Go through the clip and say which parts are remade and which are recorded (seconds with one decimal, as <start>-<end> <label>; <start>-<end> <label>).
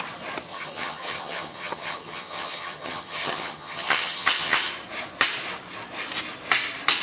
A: 0.0-0.5 recorded; 0.5-4.7 remade; 4.7-7.0 recorded